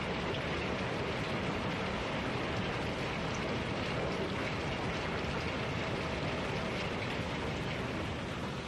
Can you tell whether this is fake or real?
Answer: real